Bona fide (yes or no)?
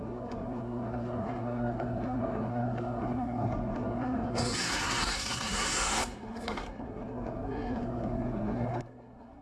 no